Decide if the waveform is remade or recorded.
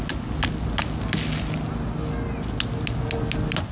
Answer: recorded